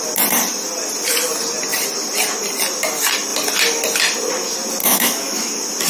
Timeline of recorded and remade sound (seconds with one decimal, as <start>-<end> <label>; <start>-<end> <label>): 0.0-4.8 recorded; 4.8-5.5 remade; 5.5-5.9 recorded